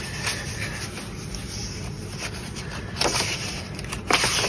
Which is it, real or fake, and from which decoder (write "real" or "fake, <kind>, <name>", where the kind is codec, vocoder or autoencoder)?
real